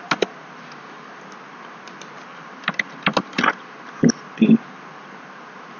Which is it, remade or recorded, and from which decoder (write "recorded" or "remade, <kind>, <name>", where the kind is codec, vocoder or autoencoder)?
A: recorded